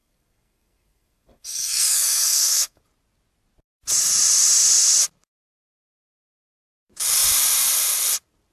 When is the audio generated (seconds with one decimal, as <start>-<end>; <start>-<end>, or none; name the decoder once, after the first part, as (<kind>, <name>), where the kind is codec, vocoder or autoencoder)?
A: 0.0-2.8 (codec, SNAC)